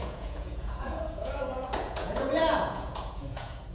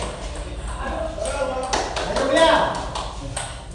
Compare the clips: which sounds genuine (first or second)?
second